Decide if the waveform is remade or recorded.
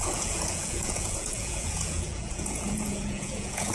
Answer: remade